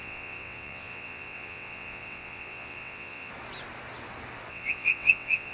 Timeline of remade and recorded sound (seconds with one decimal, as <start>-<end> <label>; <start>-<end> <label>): 0.0-3.3 remade; 3.3-4.5 recorded; 4.5-5.5 remade